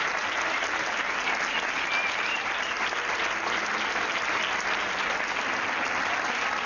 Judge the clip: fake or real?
real